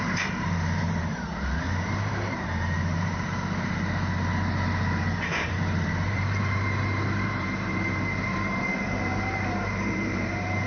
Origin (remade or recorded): remade